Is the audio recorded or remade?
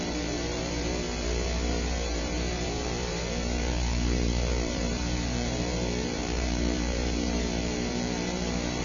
remade